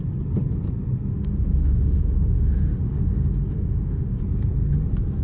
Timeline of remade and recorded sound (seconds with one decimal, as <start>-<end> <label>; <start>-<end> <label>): 0.0-1.1 recorded; 1.1-4.2 remade; 4.2-5.2 recorded

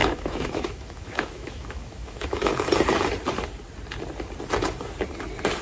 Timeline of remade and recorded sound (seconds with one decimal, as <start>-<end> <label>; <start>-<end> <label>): 0.0-2.7 remade; 2.7-5.6 recorded

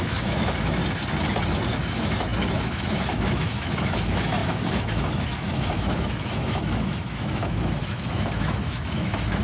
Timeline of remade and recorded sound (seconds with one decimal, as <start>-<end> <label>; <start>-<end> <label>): 0.0-0.8 remade; 0.8-1.9 recorded; 1.9-9.4 remade

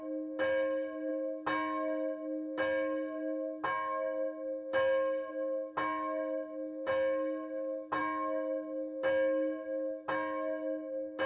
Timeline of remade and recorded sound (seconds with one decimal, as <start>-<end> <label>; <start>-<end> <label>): 0.0-11.3 recorded

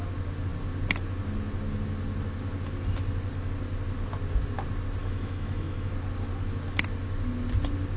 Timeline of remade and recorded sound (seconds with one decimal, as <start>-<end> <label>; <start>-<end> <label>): 0.0-5.0 recorded; 5.0-5.9 remade; 5.9-8.0 recorded

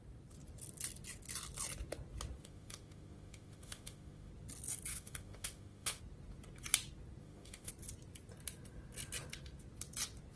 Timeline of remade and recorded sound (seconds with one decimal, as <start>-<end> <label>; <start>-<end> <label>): 0.0-2.4 recorded; 2.4-4.3 remade; 4.3-4.9 recorded; 4.9-6.0 remade; 6.0-7.2 recorded; 7.2-7.7 remade; 7.7-10.4 recorded

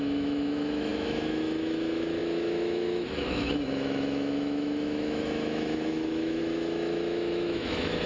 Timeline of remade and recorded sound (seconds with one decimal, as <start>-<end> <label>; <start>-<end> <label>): 0.0-8.1 remade

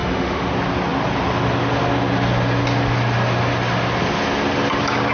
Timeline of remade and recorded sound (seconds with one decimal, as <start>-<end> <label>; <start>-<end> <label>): 0.0-0.5 remade; 0.5-5.1 recorded